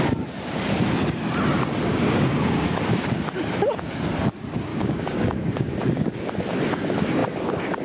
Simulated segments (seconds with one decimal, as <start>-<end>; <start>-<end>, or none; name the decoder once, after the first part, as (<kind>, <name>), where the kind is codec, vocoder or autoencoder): 1.9-3.2 (codec, DAC); 4.7-6.3